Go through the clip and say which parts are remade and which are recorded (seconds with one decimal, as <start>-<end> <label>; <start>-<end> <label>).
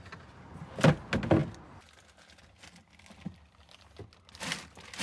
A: 0.0-5.0 recorded